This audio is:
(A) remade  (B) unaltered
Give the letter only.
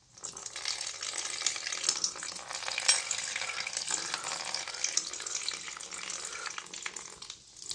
B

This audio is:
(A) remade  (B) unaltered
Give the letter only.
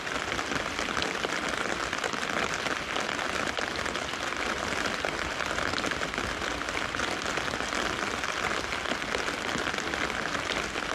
B